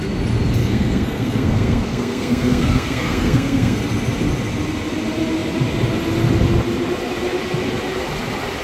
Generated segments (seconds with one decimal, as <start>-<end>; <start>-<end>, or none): 0.6-3.8